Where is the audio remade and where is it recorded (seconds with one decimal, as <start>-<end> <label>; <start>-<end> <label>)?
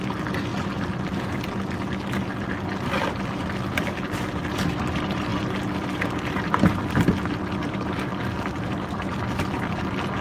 0.0-0.5 remade; 0.5-2.4 recorded; 2.4-10.2 remade